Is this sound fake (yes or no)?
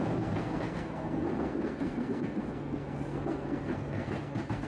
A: yes